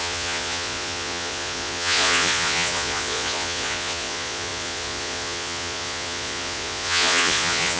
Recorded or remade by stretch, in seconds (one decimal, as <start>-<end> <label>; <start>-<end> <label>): 0.0-7.8 remade